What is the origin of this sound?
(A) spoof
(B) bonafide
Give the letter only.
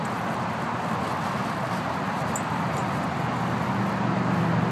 B